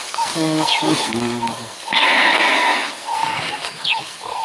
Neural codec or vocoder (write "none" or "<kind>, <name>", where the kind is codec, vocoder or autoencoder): codec, SNAC